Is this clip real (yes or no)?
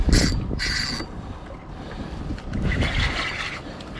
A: yes